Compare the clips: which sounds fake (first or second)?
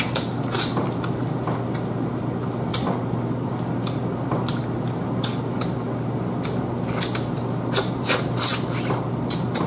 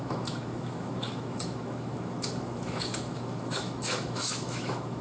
second